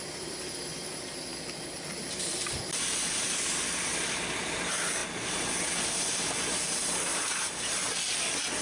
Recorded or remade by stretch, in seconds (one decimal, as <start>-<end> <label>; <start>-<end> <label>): 0.0-1.3 recorded; 1.3-4.6 remade; 4.6-8.6 recorded